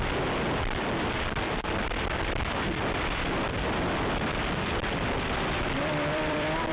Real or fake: fake